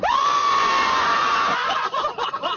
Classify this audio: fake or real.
fake